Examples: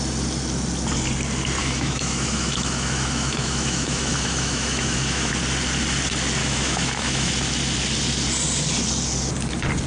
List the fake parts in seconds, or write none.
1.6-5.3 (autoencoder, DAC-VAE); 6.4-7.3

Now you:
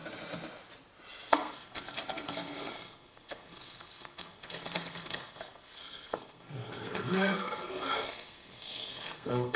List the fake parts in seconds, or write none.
1.3-9.6 (codec, SNAC)

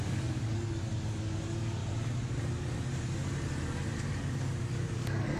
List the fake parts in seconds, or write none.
0.0-1.8 (codec, DAC); 4.3-5.4

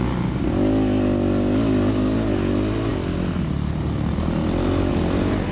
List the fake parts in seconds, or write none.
none

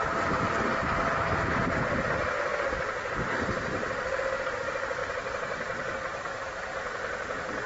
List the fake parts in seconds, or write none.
none

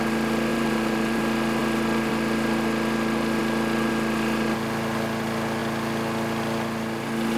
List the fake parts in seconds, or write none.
0.5-1.2 (vocoder, BigVGAN v2)

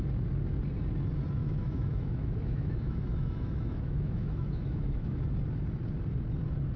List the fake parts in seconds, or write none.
1.4-5.2 (autoencoder, DAC-VAE)